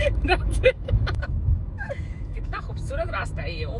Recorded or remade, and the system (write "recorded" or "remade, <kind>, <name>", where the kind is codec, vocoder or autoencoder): remade, autoencoder, DAC-VAE